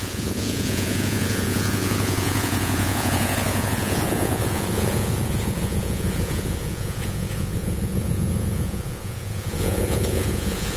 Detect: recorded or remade remade